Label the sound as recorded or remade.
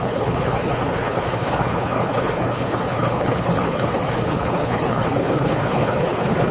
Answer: remade